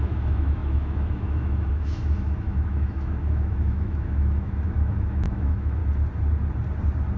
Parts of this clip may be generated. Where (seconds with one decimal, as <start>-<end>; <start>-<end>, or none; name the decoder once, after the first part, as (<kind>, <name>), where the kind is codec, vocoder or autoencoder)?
0.0-5.8 (autoencoder, DAC-VAE)